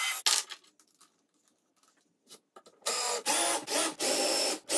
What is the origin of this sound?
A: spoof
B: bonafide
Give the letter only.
B